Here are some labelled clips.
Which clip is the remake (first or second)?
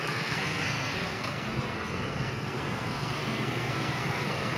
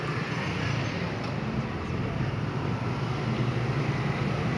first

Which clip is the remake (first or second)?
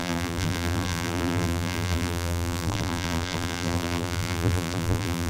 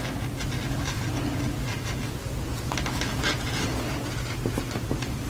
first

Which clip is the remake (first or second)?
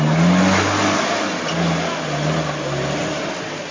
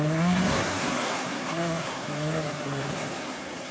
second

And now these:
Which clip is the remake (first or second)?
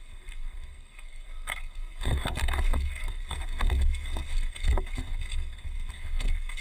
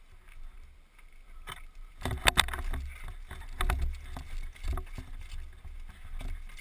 first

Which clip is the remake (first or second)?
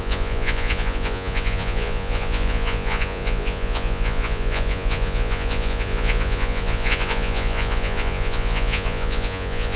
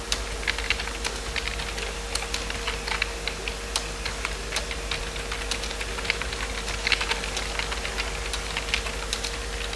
first